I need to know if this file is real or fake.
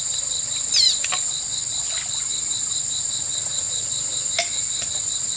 real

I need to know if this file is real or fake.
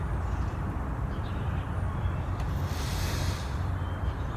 fake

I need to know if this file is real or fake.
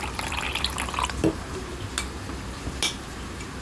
real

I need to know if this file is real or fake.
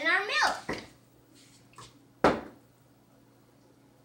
real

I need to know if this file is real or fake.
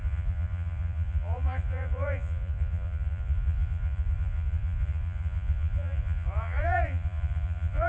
fake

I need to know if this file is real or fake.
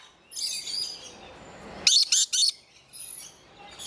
real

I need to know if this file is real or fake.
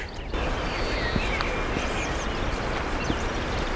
real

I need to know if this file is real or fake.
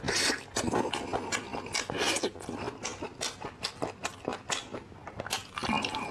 real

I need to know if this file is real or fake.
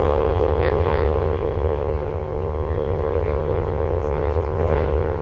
fake